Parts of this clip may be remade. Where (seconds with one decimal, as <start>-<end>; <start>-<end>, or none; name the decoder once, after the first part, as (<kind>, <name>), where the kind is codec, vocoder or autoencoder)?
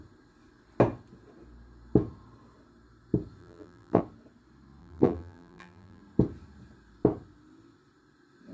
3.4-4.0 (vocoder, BigVGAN v2); 4.8-6.0